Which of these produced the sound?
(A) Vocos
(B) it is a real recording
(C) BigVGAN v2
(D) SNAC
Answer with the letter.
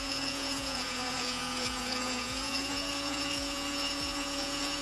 A